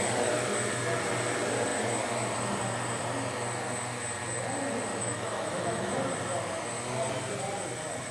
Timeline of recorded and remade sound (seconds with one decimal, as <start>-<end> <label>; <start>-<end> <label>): 0.0-4.9 recorded; 4.9-5.9 remade; 5.9-8.1 recorded